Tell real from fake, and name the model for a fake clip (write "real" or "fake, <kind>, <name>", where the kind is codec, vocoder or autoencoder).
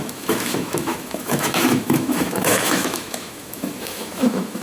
fake, autoencoder, DAC-VAE